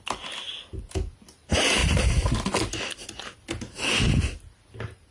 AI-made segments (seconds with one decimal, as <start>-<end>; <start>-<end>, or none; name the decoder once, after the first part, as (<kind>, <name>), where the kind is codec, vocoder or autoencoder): none